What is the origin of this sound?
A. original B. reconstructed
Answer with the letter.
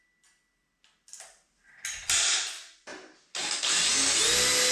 A